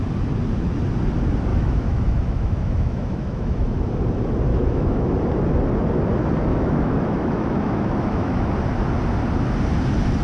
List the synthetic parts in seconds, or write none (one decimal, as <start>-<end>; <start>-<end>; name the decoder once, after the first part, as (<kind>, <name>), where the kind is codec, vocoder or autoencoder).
1.5-3.8 (autoencoder, DAC-VAE); 4.5-5.1; 6.5-8.5